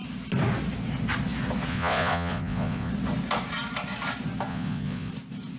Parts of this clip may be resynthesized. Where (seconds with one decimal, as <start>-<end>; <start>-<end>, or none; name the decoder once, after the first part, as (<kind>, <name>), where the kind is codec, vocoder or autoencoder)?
1.7-2.9 (vocoder, Vocos); 4.5-5.1